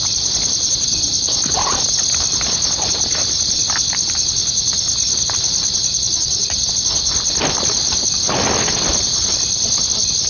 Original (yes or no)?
yes